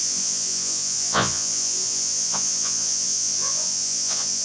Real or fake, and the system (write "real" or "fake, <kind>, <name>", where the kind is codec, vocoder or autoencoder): fake, vocoder, Vocos